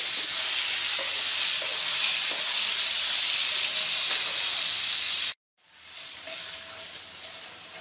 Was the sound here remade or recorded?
recorded